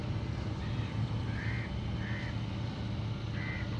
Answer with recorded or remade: recorded